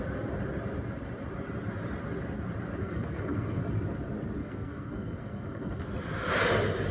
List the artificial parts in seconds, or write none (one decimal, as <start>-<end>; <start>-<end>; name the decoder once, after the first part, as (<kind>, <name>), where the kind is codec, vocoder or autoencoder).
2.8-3.6 (codec, SNAC); 4.4-5.8